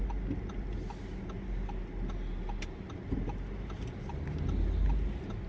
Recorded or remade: recorded